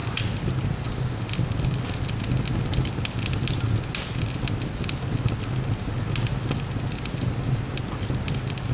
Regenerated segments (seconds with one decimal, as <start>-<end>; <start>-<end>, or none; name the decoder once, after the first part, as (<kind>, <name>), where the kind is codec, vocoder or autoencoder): none